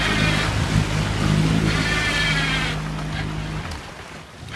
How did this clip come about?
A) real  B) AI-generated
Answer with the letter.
A